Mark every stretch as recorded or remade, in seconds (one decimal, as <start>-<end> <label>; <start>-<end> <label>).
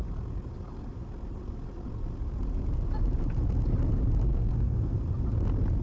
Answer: 0.0-4.3 recorded; 4.3-5.0 remade; 5.0-5.8 recorded